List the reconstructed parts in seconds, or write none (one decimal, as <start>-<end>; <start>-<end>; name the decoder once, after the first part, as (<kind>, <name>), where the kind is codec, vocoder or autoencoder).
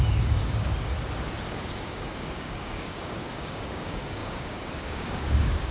0.0-0.7 (codec, DAC); 1.4-5.7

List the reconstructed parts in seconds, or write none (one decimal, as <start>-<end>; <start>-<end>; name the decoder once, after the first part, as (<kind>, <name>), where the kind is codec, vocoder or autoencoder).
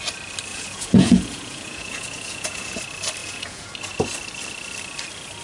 0.5-2.8 (vocoder, Vocos); 3.2-3.7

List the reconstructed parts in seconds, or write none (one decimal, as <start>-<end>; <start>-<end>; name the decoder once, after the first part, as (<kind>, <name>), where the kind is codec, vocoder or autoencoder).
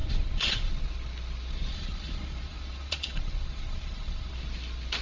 0.0-0.7 (vocoder, Vocos); 1.7-4.3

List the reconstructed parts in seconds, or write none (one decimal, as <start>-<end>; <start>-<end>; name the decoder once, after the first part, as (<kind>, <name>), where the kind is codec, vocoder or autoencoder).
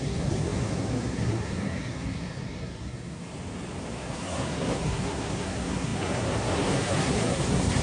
0.0-3.3 (codec, SNAC); 3.9-7.8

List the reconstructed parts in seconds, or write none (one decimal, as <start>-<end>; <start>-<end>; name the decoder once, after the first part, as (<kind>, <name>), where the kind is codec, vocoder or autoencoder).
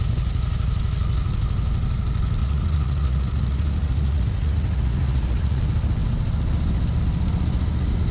2.4-5.6 (vocoder, Vocos)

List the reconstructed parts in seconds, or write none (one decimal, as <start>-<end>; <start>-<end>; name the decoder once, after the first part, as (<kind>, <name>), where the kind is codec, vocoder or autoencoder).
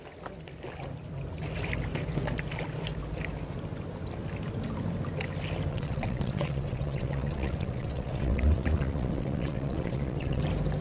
5.7-10.4 (vocoder, WaveNeXt)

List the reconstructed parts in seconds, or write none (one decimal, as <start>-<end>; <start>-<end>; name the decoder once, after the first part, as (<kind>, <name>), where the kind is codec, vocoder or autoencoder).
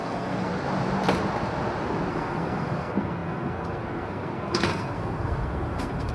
0.0-0.5 (codec, SNAC); 2.1-6.1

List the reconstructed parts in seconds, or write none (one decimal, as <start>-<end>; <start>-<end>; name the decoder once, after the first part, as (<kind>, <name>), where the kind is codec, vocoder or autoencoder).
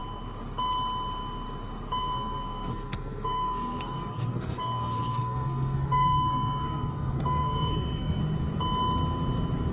2.0-8.2 (codec, SNAC)